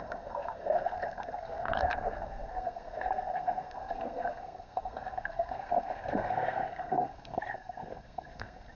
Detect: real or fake fake